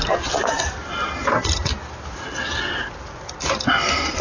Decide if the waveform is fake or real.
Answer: real